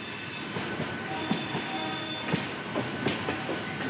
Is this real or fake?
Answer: real